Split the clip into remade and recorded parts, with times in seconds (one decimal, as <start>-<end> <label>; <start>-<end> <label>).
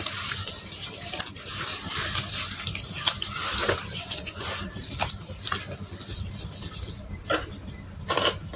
0.0-3.9 recorded; 3.9-4.5 remade; 4.5-8.6 recorded